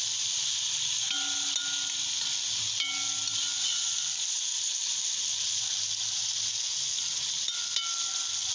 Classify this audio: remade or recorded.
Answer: recorded